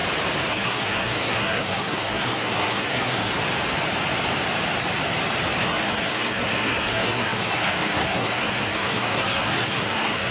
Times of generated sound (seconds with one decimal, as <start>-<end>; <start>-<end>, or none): 0.5-3.3; 5.6-10.3